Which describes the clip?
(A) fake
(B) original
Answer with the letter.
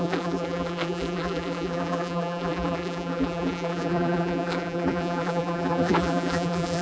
A